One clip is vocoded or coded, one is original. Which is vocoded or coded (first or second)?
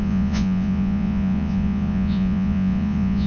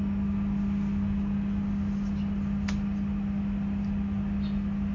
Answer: first